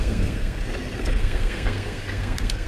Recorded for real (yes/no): no